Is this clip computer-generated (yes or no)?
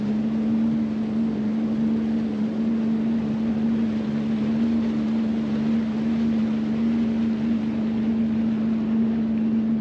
no